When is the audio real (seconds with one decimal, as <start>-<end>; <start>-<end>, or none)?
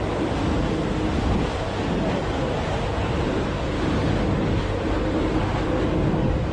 0.0-1.5; 3.4-4.0; 5.0-6.5